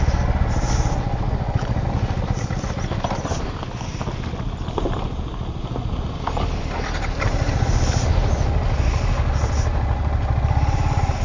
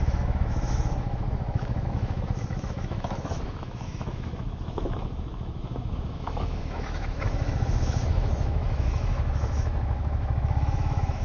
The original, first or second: first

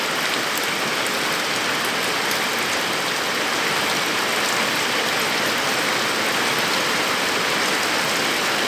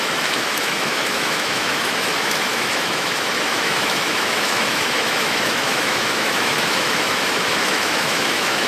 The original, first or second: first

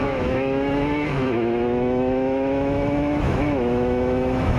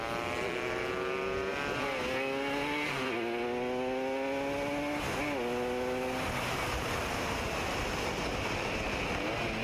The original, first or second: second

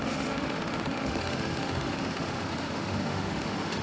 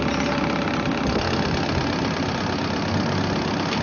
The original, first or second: second